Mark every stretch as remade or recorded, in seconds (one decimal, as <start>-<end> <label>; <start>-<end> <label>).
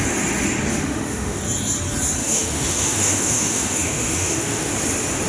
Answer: 0.0-0.7 recorded; 0.7-1.4 remade; 1.4-2.2 recorded; 2.2-4.7 remade; 4.7-5.3 recorded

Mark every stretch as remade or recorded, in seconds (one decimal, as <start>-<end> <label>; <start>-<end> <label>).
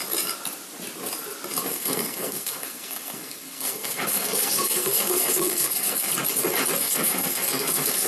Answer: 0.0-1.7 recorded; 1.7-6.1 remade; 6.1-6.8 recorded; 6.8-8.1 remade